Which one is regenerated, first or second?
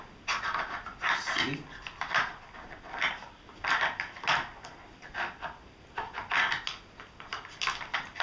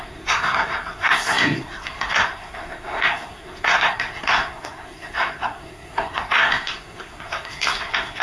second